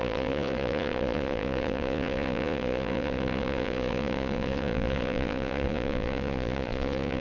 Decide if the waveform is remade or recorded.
remade